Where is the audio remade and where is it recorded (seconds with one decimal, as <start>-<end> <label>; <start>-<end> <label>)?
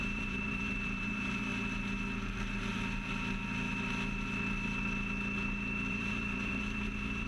0.0-1.5 remade; 1.5-5.9 recorded; 5.9-7.3 remade